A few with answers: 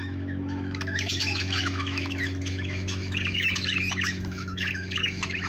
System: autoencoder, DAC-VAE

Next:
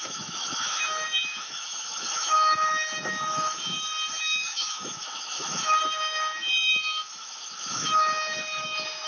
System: autoencoder, DAC-VAE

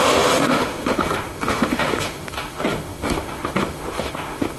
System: autoencoder, DAC-VAE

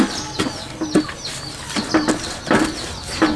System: none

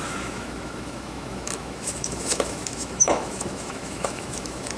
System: autoencoder, DAC-VAE